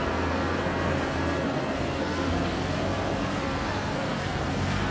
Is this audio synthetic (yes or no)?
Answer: yes